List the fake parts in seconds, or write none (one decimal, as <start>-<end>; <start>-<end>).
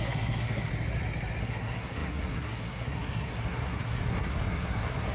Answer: 0.0-0.7; 1.4-5.1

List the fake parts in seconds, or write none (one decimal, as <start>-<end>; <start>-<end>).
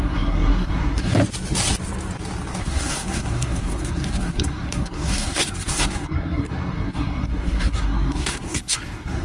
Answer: 0.0-1.2; 2.6-9.2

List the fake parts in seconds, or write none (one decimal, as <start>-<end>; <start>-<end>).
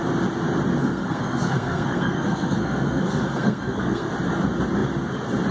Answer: 0.8-4.1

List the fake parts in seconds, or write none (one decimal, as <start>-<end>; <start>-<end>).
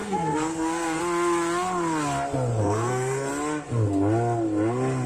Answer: 0.0-1.0; 2.5-3.3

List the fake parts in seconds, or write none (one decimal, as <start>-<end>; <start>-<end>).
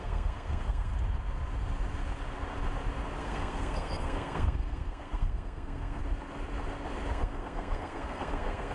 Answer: 0.0-0.9; 3.2-6.0; 7.1-8.7